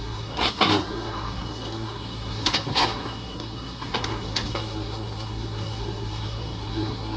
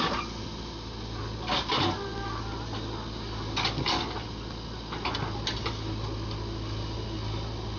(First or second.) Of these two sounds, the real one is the second